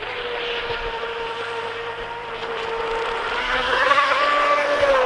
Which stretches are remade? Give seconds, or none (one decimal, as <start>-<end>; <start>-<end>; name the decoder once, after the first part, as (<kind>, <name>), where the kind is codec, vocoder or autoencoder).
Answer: 3.4-4.2 (codec, SNAC)

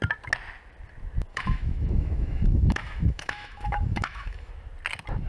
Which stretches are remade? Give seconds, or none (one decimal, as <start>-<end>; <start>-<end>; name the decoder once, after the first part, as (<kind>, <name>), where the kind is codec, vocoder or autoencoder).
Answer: 1.3-4.5 (autoencoder, DAC-VAE)

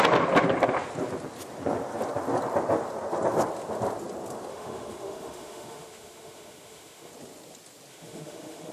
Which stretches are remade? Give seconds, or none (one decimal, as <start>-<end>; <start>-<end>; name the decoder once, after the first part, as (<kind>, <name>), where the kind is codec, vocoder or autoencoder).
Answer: 4.5-7.1 (autoencoder, DAC-VAE); 7.9-8.7

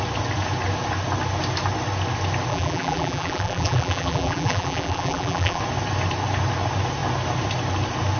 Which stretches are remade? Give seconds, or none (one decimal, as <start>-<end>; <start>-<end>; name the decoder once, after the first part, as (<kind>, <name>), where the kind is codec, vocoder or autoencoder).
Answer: 2.5-5.6 (vocoder, BigVGAN v2)